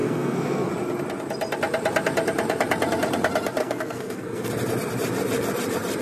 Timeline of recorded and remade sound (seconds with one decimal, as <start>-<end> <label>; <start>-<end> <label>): 0.0-0.7 remade; 0.7-3.6 recorded; 3.6-4.5 remade; 4.5-6.0 recorded